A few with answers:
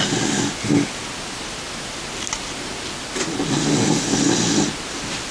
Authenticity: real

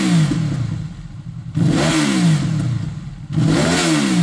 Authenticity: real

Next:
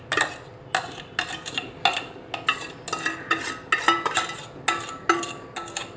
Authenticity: real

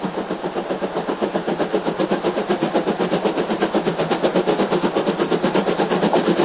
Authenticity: real